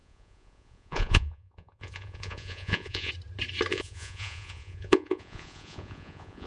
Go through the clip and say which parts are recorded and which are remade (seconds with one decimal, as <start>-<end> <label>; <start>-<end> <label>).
0.0-3.1 remade; 3.1-3.7 recorded; 3.7-6.5 remade